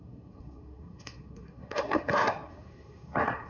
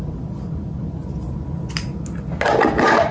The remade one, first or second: first